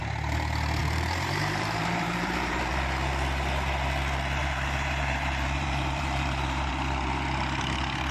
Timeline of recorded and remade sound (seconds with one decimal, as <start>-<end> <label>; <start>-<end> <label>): 0.0-0.8 recorded; 0.8-2.7 remade; 2.7-4.4 recorded; 4.4-6.7 remade; 6.7-8.1 recorded